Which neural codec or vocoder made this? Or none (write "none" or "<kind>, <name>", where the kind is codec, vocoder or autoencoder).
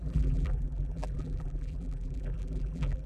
vocoder, BigVGAN v2